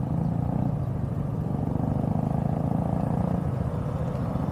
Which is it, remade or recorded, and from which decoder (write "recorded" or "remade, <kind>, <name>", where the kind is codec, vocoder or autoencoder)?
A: recorded